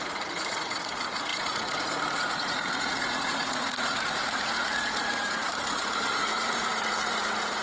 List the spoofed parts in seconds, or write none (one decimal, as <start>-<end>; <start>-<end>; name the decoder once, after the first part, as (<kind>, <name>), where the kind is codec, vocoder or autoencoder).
0.0-7.6 (vocoder, Vocos)